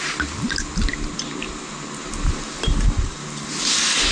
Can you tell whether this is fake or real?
real